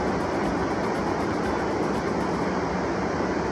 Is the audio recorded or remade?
recorded